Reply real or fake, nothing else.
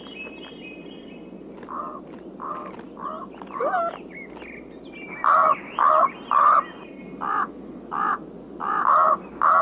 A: real